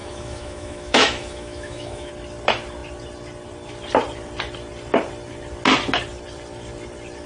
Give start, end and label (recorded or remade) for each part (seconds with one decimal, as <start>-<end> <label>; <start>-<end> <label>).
0.0-2.1 remade; 2.1-7.3 recorded